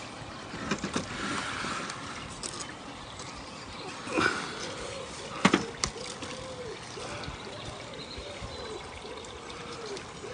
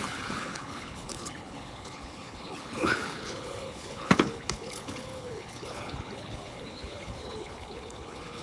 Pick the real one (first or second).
first